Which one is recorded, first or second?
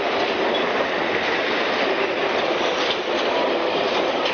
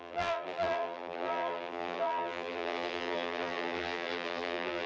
first